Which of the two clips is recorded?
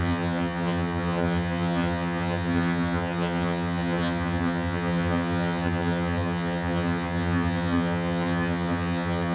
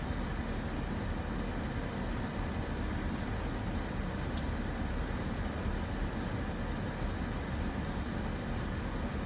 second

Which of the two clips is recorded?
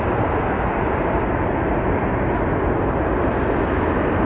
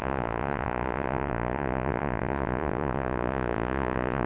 first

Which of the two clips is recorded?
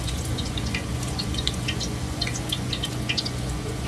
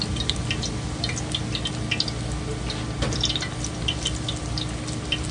second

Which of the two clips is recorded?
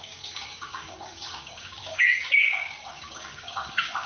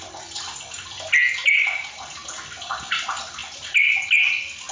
second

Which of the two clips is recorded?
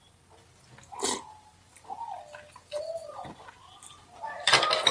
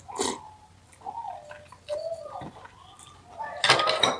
second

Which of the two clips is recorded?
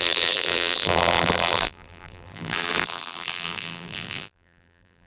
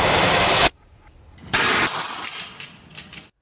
second